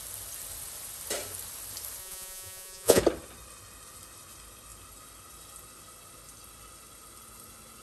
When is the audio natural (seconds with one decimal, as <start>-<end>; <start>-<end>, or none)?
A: 0.0-2.0; 3.0-7.8